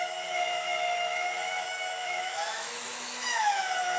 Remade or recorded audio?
remade